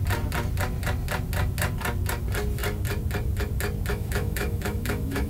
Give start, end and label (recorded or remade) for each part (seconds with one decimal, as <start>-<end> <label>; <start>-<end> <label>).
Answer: 0.0-3.9 recorded; 3.9-5.3 remade